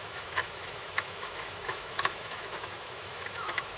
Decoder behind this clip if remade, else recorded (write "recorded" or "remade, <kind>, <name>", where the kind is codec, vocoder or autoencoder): remade, autoencoder, DAC-VAE